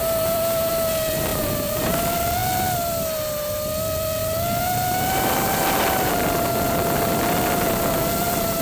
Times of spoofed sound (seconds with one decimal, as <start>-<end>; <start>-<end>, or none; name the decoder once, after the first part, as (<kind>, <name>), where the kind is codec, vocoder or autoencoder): 0.0-0.7 (vocoder, BigVGAN v2); 1.3-1.9; 4.2-6.1